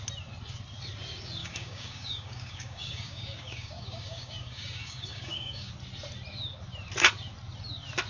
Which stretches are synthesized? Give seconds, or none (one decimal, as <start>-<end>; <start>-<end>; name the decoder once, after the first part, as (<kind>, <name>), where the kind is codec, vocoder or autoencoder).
1.4-5.7 (codec, DAC)